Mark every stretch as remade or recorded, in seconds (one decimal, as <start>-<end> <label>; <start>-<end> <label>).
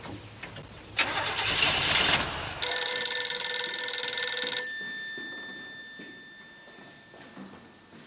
0.0-8.1 recorded